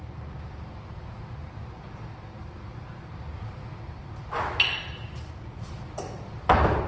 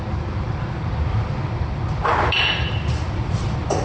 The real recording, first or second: first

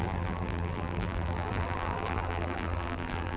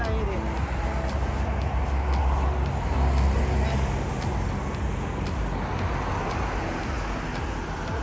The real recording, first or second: second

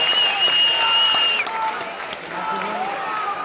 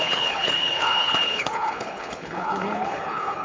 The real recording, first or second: first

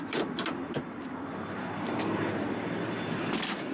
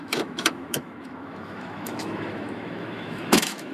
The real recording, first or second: first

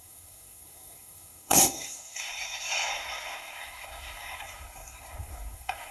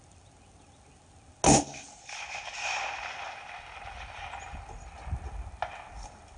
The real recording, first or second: second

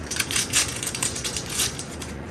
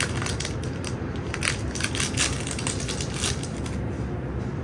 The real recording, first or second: second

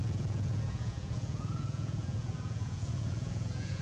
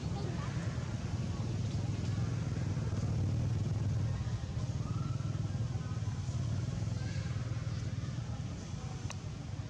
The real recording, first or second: second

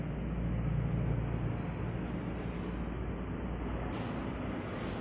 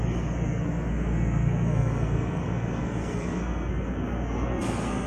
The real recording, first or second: first